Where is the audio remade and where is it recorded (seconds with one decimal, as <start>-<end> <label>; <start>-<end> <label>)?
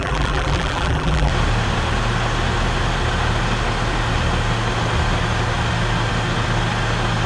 0.0-1.3 remade; 1.3-7.3 recorded